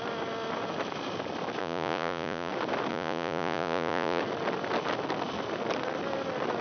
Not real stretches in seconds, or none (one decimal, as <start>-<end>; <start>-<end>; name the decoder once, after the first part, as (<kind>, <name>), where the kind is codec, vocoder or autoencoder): 1.6-2.5 (vocoder, Vocos); 2.9-4.2